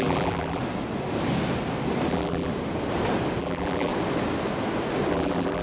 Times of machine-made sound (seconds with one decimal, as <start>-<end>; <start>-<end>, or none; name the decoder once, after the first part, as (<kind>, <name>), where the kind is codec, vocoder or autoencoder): 0.0-0.6 (vocoder, BigVGAN v2); 2.1-2.5; 3.4-3.9; 5.1-5.6